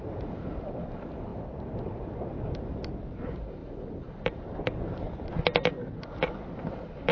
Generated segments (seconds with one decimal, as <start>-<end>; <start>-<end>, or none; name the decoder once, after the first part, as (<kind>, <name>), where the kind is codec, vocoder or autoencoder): 3.6-4.8 (vocoder, BigVGAN v2)